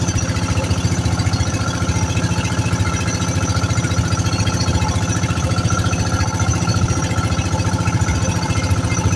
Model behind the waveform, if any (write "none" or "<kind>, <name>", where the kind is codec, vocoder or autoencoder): none